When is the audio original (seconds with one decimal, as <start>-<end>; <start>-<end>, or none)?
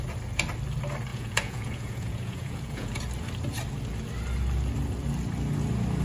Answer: 0.0-1.1; 3.0-6.0